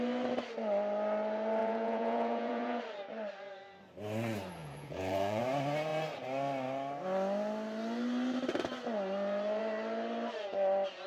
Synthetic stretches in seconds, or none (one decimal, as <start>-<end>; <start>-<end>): 1.6-2.8; 4.6-5.4